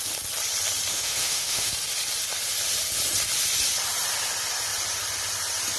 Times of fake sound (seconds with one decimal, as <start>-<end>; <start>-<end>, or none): 0.9-1.7